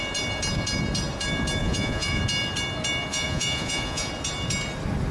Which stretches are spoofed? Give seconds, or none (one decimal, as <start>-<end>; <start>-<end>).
1.6-2.2; 3.1-4.1